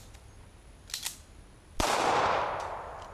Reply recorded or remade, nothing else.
recorded